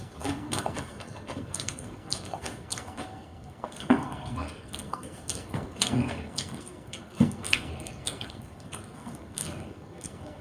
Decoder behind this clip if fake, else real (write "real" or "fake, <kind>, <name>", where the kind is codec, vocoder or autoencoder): fake, codec, SNAC